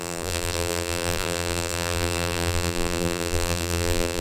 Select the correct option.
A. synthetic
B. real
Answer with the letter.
A